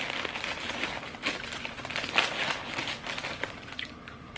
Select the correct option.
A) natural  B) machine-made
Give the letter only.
A